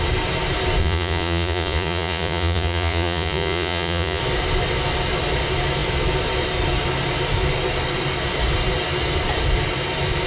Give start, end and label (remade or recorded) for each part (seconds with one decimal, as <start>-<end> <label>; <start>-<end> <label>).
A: 0.0-0.8 recorded; 0.8-4.2 remade; 4.2-10.3 recorded